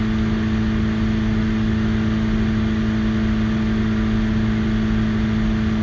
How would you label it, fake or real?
real